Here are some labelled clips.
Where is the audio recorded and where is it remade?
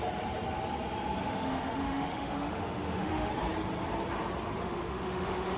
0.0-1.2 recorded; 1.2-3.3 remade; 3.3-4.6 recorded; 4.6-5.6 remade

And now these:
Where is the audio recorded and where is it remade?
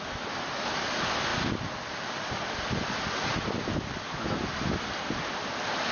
0.0-5.9 recorded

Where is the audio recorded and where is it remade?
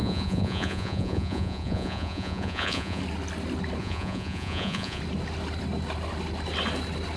0.0-3.0 remade; 3.0-3.8 recorded; 3.8-5.0 remade; 5.0-7.2 recorded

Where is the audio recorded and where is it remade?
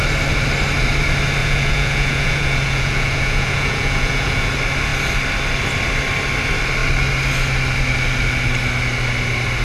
0.0-1.4 recorded; 1.4-4.5 remade; 4.5-9.6 recorded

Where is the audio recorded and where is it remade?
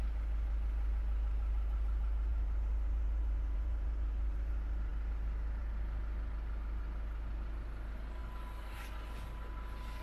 0.0-2.3 recorded; 2.3-4.5 remade; 4.5-10.0 recorded